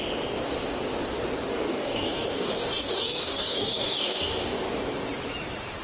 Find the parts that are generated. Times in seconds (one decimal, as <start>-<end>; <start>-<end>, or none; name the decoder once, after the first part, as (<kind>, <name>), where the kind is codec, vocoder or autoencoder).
1.5-4.6 (codec, DAC)